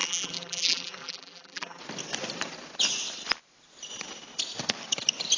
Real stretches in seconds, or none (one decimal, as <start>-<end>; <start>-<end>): 1.8-5.4